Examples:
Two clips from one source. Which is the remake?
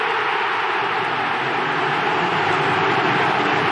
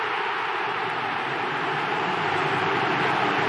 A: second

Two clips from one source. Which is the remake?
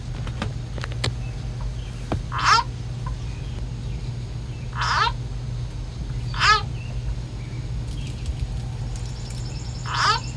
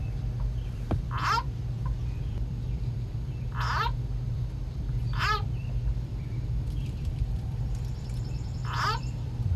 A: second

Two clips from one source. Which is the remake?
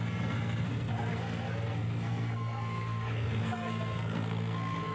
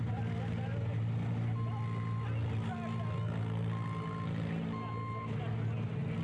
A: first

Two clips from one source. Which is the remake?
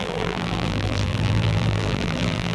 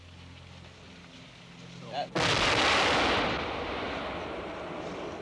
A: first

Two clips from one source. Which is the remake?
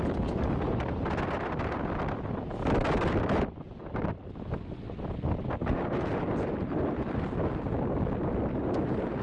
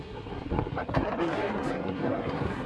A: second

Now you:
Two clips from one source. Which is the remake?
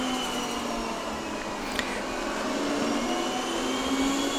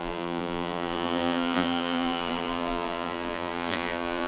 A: second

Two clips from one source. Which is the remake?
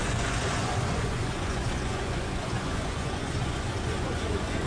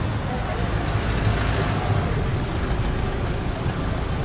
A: first